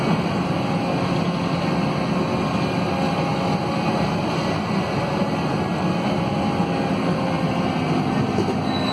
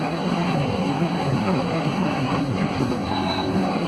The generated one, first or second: second